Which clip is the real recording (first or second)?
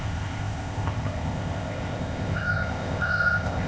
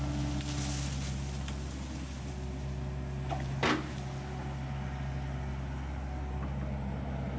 second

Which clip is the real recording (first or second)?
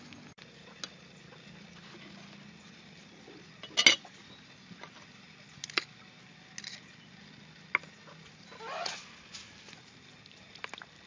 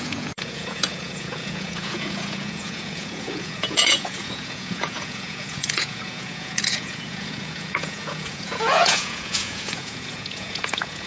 first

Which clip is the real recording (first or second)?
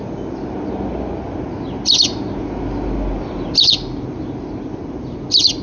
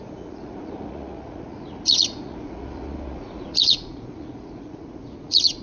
first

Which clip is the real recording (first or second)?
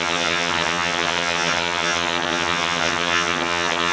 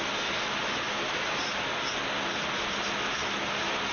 second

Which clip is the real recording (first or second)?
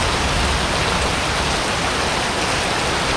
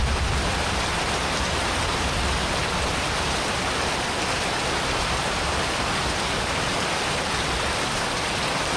first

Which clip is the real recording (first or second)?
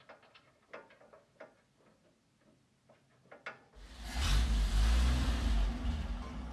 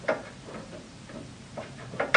first